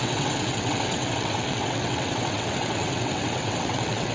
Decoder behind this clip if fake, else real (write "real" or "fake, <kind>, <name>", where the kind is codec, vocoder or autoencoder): fake, vocoder, WaveNeXt